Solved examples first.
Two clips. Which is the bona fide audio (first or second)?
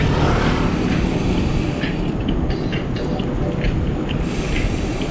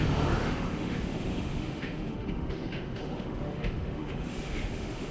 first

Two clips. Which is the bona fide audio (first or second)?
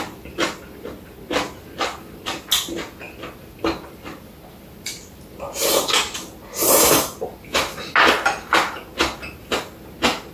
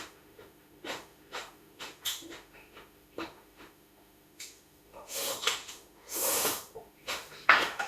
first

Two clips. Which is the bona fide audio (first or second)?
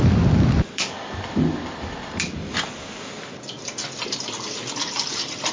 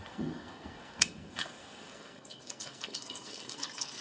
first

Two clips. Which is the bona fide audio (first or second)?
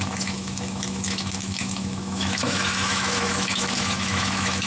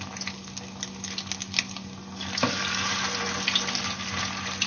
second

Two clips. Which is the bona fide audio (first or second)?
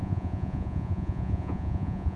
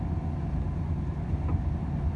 second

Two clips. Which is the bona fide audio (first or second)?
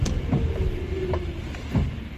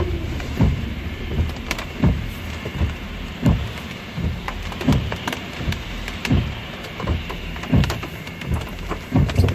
first